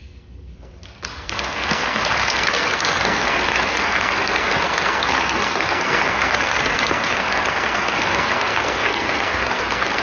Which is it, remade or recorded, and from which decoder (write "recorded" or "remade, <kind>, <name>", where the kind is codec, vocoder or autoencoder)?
remade, codec, SNAC